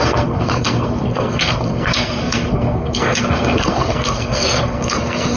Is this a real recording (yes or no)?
no